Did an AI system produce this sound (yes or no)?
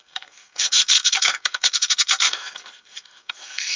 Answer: yes